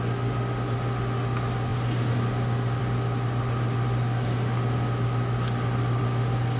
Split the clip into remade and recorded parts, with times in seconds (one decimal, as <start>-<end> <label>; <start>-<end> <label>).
0.0-6.6 recorded